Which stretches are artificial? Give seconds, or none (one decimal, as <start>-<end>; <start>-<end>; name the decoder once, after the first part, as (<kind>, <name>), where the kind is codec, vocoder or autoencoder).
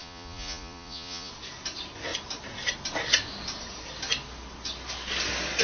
0.0-1.3 (vocoder, Vocos)